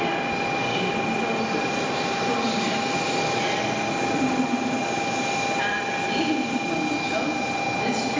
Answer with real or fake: real